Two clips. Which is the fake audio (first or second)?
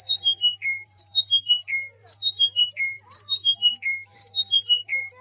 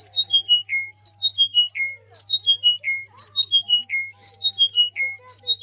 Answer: first